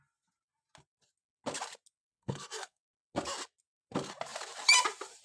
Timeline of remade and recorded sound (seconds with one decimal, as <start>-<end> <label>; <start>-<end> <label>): 0.0-2.0 recorded; 2.0-2.8 remade; 2.8-5.2 recorded